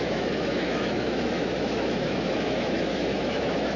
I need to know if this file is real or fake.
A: fake